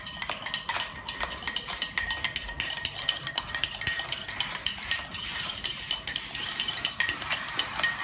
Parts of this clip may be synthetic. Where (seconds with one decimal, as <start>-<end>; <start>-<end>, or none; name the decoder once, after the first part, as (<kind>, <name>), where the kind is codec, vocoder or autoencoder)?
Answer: 4.5-7.3 (vocoder, BigVGAN v2)